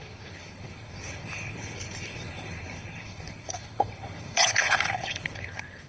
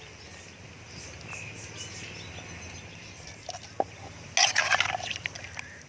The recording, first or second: second